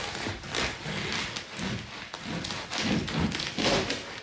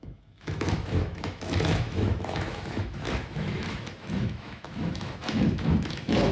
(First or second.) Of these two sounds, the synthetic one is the second